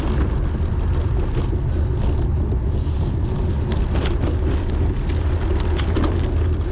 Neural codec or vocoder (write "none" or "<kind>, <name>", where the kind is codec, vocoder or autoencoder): none